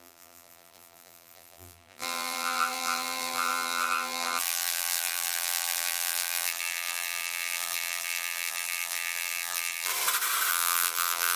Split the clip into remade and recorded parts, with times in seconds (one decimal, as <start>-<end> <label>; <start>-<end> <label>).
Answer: 0.0-9.9 remade; 9.9-10.5 recorded; 10.5-11.4 remade